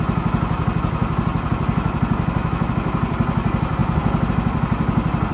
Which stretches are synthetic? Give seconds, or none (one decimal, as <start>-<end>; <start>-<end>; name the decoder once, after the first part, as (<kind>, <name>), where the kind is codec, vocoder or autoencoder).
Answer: none